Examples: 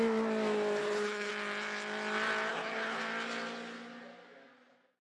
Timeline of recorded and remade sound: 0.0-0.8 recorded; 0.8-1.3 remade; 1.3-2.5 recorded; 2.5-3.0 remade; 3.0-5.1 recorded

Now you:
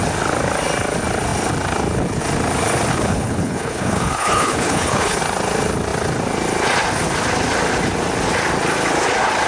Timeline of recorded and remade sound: 0.0-2.9 recorded; 2.9-5.2 remade; 5.2-9.5 recorded

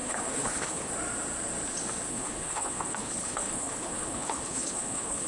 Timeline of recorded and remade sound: 0.0-0.9 remade; 0.9-2.1 recorded; 2.1-5.3 remade

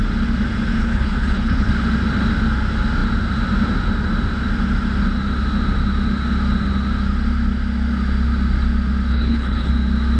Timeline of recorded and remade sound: 0.0-0.8 recorded; 0.8-1.7 remade; 1.7-9.1 recorded; 9.1-9.7 remade; 9.7-10.2 recorded

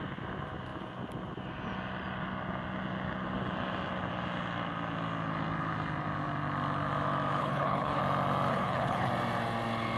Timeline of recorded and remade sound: 0.0-7.4 recorded; 7.4-8.0 remade; 8.0-8.5 recorded; 8.5-9.1 remade; 9.1-10.0 recorded

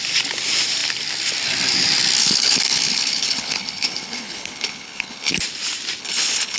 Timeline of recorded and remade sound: 0.0-2.2 recorded; 2.2-5.3 remade; 5.3-6.0 recorded; 6.0-6.6 remade

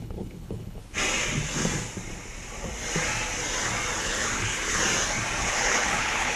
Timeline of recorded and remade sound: 0.0-0.8 remade; 0.8-4.0 recorded; 4.0-4.8 remade; 4.8-5.4 recorded; 5.4-6.4 remade